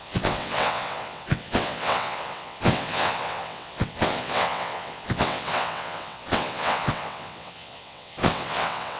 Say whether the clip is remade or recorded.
remade